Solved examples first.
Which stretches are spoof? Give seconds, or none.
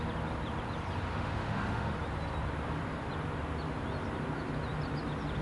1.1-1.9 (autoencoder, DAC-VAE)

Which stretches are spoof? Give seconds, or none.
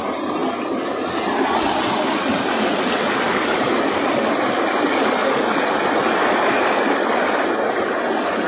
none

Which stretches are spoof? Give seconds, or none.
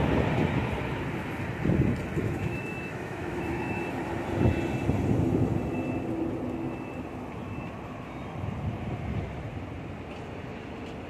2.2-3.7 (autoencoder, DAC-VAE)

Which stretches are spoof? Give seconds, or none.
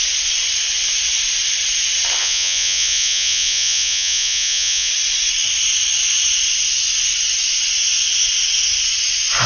2.2-4.9 (vocoder, Vocos)